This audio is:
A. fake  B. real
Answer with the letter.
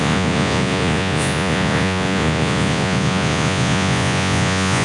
A